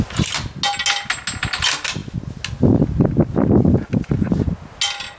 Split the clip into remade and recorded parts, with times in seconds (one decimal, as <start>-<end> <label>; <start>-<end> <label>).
0.0-5.2 recorded